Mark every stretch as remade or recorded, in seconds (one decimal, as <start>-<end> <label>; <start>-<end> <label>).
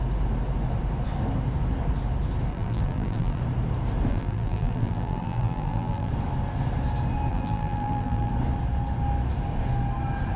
0.0-2.5 recorded; 2.5-3.4 remade; 3.4-4.1 recorded; 4.1-6.1 remade; 6.1-7.3 recorded; 7.3-8.3 remade; 8.3-10.4 recorded